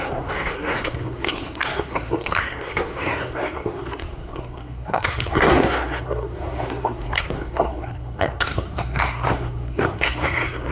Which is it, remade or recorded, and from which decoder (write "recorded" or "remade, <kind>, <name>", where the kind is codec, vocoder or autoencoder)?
remade, codec, SNAC